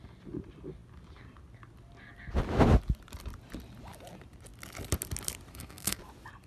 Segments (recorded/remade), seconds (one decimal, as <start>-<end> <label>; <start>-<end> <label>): 0.0-5.5 recorded; 5.5-6.0 remade; 6.0-6.5 recorded

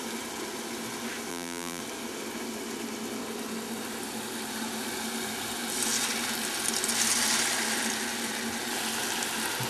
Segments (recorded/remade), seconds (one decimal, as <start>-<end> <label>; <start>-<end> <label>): 0.0-1.3 recorded; 1.3-1.8 remade; 1.8-9.7 recorded